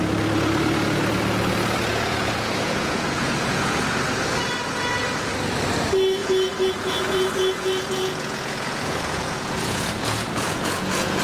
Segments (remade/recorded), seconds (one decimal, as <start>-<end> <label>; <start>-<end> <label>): 0.0-1.9 recorded; 1.9-3.8 remade; 3.8-6.2 recorded; 6.2-11.2 remade